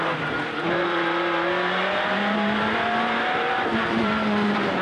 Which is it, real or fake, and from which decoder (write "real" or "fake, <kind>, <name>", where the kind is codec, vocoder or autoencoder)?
fake, vocoder, BigVGAN v2